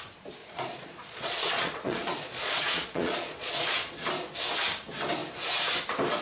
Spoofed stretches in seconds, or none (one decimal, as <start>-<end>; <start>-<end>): 0.4-4.1